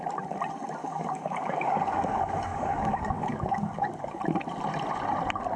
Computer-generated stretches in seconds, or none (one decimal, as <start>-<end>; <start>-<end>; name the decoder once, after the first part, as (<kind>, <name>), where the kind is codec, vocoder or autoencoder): 0.8-4.2 (codec, DAC)